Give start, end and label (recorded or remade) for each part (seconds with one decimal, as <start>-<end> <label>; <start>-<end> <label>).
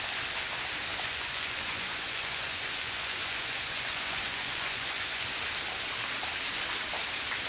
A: 0.0-0.9 recorded; 0.9-5.4 remade; 5.4-7.5 recorded